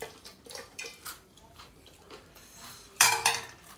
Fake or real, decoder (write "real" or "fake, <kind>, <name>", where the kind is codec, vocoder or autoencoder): fake, vocoder, BigVGAN v2